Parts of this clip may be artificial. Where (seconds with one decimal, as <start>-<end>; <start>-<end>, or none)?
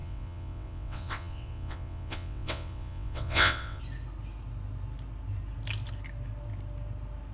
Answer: 0.0-3.8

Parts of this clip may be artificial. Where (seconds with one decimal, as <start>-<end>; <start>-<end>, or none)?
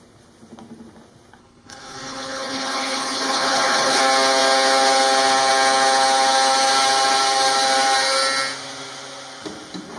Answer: 1.4-4.0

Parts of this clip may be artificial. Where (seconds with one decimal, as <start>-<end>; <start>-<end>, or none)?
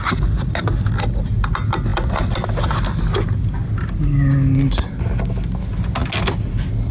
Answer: none